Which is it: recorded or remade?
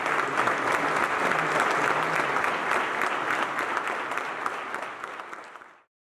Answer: recorded